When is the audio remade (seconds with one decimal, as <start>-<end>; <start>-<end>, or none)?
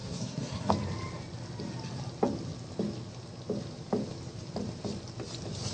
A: 0.0-0.7